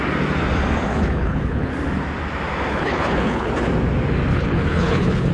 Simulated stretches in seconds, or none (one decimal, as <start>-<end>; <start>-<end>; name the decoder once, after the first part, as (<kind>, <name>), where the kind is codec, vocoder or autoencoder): 0.9-1.7 (codec, HILCodec); 2.7-3.5; 4.3-5.3